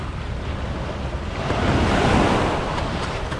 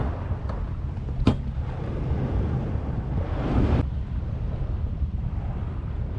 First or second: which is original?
first